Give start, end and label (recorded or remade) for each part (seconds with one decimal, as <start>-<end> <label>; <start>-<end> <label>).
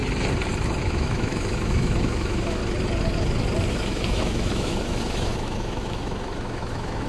0.0-0.8 recorded; 0.8-2.6 remade; 2.6-3.7 recorded; 3.7-7.1 remade